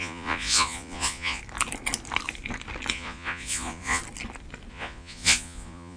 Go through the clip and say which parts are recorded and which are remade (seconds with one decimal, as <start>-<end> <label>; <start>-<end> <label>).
0.0-1.4 remade; 1.4-2.9 recorded; 2.9-4.0 remade; 4.0-4.7 recorded; 4.7-6.0 remade